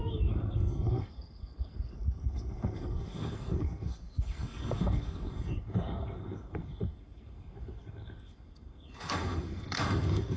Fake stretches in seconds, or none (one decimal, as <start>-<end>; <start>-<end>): 0.0-10.4